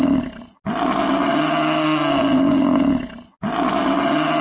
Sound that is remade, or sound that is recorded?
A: recorded